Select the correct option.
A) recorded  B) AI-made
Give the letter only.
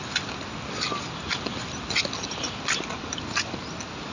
A